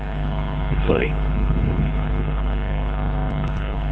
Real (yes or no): no